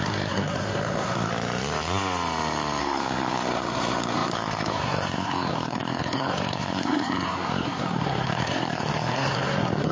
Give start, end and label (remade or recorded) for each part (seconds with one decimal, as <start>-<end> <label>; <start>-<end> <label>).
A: 0.0-1.3 remade; 1.3-2.8 recorded; 2.8-9.9 remade